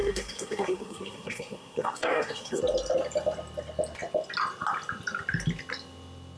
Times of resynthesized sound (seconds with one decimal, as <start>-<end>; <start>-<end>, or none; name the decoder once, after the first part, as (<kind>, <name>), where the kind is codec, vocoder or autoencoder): 0.0-2.6 (codec, SNAC)